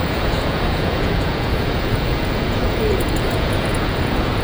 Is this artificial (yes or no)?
yes